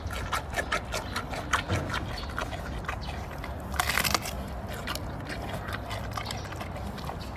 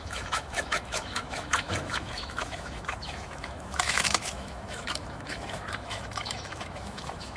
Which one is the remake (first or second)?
second